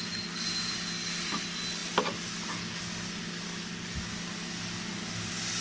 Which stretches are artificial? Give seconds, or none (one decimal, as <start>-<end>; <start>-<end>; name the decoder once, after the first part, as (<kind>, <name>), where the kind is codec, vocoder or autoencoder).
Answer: none